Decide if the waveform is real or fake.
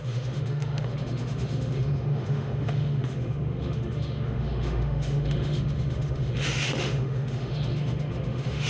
fake